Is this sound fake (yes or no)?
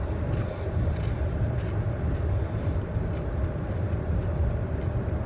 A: no